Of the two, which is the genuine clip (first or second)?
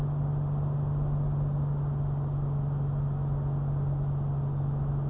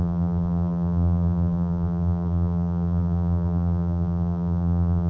first